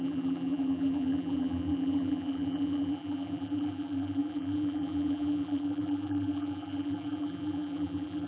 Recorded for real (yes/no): no